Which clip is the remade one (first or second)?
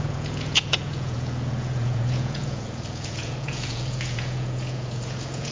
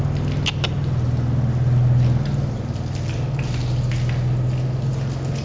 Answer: first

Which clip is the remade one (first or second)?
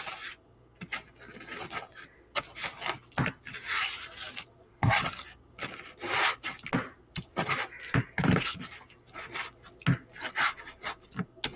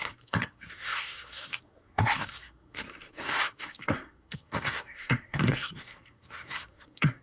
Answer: second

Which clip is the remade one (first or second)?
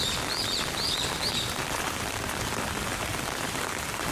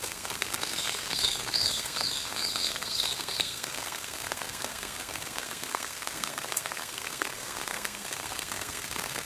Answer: second